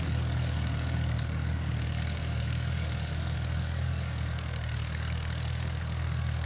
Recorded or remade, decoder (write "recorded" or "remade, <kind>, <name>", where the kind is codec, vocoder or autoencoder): remade, codec, DAC